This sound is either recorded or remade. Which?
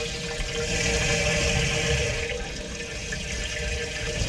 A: recorded